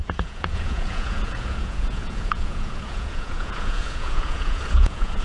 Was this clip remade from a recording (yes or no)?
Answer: yes